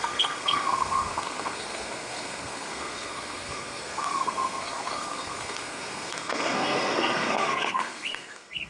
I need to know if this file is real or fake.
fake